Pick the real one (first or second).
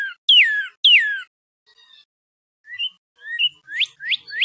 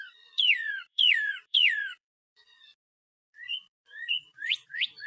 first